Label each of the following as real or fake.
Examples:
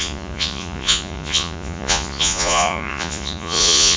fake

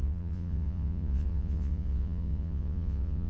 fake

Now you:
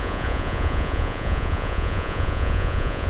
fake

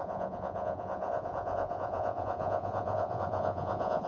fake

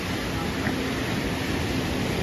real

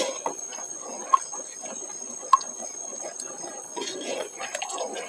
fake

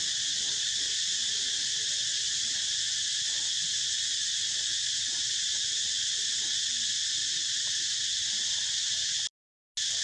real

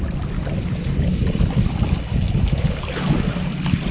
real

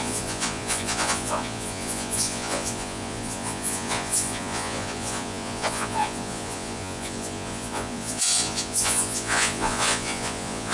fake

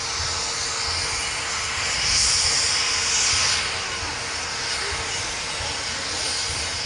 real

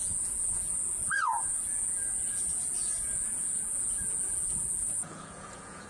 fake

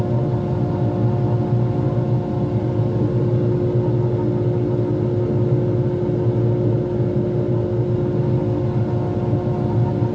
real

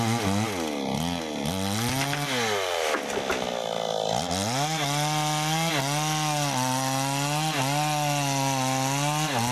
real